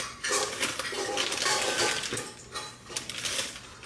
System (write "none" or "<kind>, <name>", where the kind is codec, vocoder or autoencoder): none